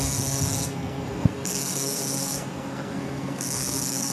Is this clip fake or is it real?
fake